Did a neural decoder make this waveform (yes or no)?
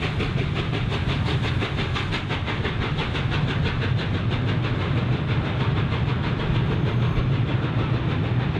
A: no